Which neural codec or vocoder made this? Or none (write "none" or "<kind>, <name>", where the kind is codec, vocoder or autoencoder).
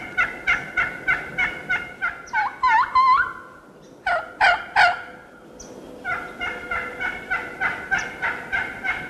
none